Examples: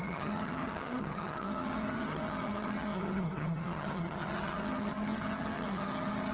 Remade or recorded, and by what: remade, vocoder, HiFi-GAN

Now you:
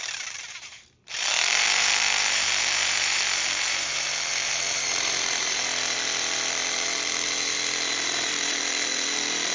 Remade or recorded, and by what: remade, vocoder, BigVGAN v2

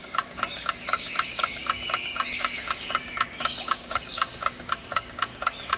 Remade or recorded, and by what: remade, codec, DAC